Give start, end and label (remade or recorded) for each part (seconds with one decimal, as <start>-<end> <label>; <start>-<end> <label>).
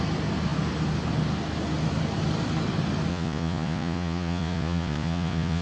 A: 0.0-3.1 recorded; 3.1-5.6 remade